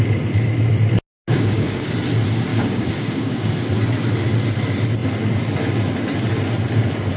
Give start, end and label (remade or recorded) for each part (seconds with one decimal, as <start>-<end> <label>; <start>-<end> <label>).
0.0-1.3 recorded; 1.3-1.9 remade; 1.9-2.5 recorded; 2.5-3.5 remade; 3.5-7.2 recorded